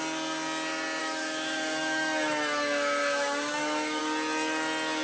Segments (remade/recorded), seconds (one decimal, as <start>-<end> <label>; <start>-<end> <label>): 0.0-1.0 recorded; 1.0-4.0 remade; 4.0-5.0 recorded